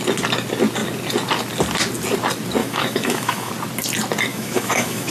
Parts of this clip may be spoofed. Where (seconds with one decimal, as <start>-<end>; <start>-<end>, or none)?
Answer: 2.6-3.5; 4.3-5.1

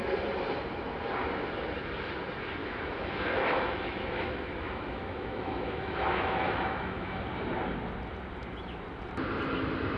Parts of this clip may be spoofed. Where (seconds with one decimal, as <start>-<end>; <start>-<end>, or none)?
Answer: 2.6-7.2